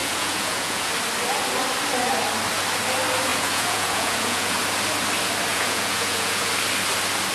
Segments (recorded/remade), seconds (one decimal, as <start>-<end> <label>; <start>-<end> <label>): 0.0-0.9 remade; 0.9-3.3 recorded; 3.3-4.6 remade; 4.6-5.5 recorded; 5.5-6.5 remade; 6.5-7.3 recorded